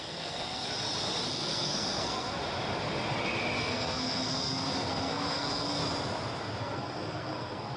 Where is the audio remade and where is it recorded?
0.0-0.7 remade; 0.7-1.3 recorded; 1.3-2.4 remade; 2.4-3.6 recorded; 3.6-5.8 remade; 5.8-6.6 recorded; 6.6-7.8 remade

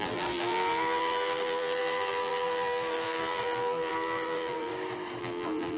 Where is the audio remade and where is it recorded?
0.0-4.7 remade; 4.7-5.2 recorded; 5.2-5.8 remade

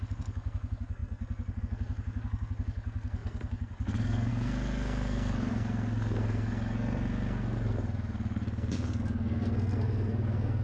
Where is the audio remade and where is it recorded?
0.0-10.6 remade

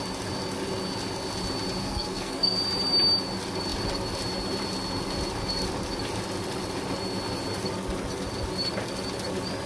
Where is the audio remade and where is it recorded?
0.0-1.8 recorded; 1.8-2.6 remade; 2.6-9.7 recorded

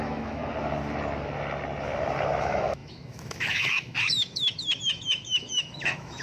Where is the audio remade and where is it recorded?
0.0-0.4 remade; 0.4-2.4 recorded; 2.4-6.2 remade